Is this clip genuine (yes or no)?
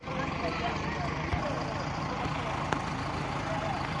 yes